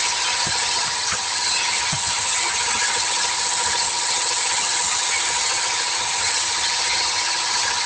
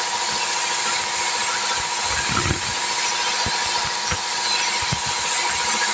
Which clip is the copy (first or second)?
first